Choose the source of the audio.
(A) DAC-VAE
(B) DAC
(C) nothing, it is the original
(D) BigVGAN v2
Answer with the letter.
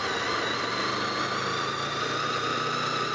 C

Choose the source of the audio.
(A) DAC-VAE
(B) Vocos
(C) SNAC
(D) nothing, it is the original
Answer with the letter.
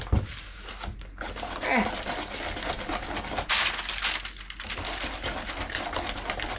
D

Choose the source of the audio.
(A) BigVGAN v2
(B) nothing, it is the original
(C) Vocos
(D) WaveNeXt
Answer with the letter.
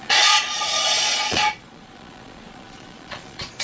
C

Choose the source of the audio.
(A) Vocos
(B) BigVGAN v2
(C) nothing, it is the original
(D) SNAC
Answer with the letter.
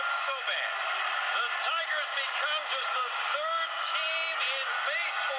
C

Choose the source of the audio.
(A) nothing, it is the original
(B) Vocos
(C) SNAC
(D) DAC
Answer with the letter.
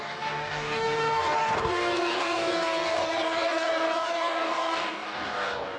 D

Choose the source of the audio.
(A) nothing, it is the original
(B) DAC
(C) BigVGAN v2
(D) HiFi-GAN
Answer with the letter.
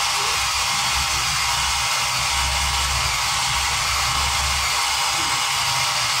A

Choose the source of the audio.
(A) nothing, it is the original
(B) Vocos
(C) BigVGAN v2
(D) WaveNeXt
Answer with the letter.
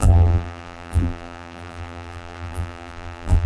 C